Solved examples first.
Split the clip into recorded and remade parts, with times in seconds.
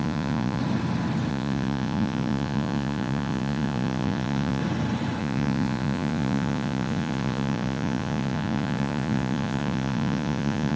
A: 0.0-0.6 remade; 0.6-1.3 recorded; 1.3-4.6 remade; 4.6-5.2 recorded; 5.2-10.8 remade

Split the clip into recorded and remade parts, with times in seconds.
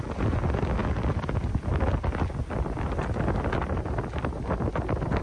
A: 0.0-5.2 recorded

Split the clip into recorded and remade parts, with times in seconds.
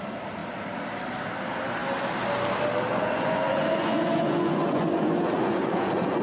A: 0.0-2.9 recorded; 2.9-6.2 remade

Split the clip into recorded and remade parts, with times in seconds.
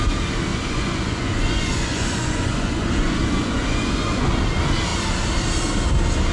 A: 0.0-0.5 recorded; 0.5-4.3 remade; 4.3-6.3 recorded